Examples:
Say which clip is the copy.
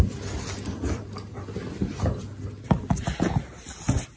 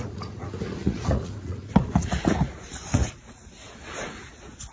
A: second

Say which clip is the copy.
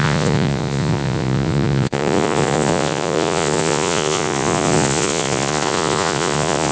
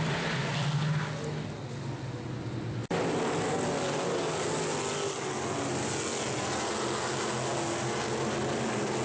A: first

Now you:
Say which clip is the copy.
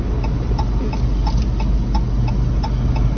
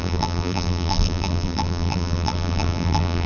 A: second